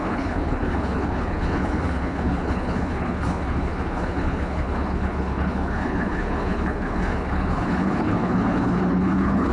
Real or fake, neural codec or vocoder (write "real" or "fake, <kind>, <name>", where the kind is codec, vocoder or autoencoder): fake, codec, HILCodec